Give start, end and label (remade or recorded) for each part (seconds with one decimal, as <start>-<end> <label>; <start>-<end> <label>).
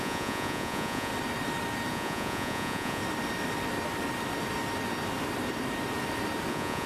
0.0-1.1 remade; 1.1-1.9 recorded; 1.9-3.0 remade; 3.0-6.5 recorded; 6.5-6.9 remade